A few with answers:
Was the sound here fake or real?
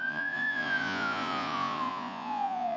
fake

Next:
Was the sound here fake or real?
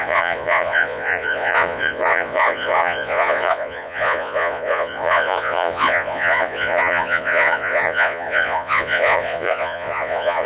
fake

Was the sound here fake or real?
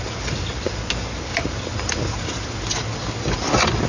real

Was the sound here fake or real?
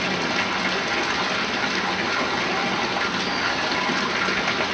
real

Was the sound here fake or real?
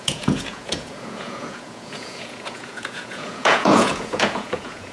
fake